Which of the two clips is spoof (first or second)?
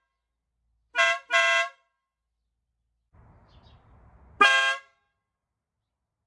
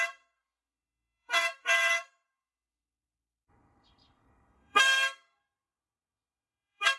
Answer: second